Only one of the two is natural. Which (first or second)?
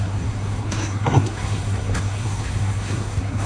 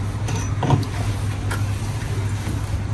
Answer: second